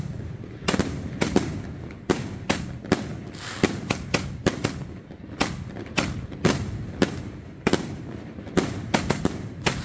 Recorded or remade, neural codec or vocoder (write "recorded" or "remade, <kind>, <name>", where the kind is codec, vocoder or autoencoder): remade, vocoder, BigVGAN v2